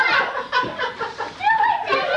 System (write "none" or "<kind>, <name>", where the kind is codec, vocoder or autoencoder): none